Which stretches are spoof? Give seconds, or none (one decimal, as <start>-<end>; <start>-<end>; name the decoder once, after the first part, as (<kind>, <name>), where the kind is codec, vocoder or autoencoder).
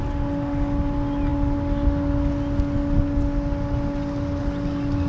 none